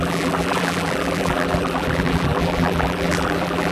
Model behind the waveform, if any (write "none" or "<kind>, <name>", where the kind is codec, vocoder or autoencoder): vocoder, BigVGAN v2